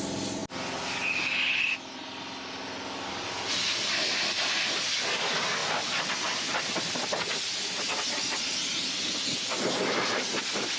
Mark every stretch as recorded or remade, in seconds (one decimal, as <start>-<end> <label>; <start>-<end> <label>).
0.0-5.6 recorded; 5.6-6.1 remade; 6.1-10.8 recorded